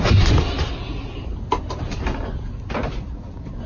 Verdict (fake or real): real